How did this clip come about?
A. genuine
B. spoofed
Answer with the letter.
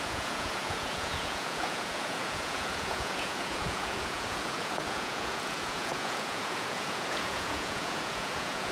B